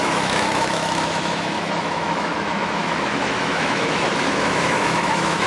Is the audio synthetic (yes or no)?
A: yes